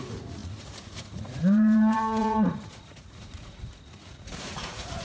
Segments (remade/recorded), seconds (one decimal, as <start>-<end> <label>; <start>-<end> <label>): 0.0-5.0 remade